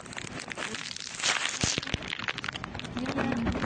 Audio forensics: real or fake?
real